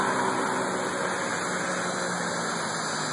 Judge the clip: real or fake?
real